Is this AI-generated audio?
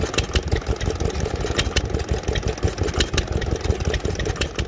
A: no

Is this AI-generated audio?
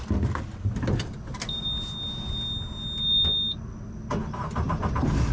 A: no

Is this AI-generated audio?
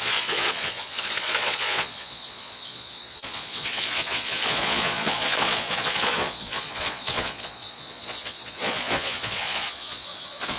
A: yes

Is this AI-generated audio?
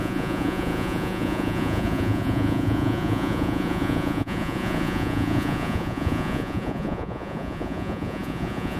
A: yes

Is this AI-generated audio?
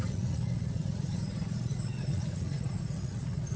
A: yes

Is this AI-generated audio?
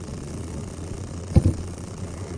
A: yes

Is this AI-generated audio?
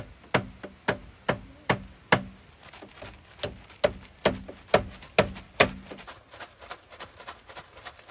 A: no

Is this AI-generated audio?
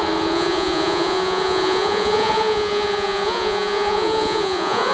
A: yes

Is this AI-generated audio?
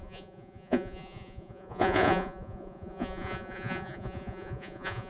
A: yes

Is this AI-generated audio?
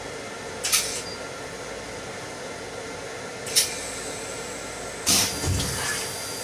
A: no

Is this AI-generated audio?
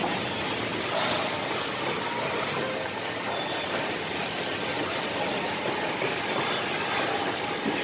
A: no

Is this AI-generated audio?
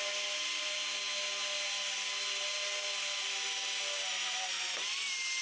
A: no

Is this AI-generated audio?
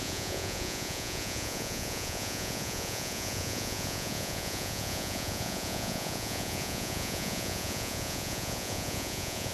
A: yes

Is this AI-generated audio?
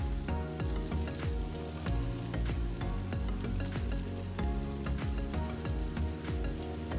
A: no